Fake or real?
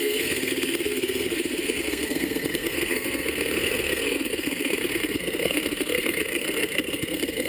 fake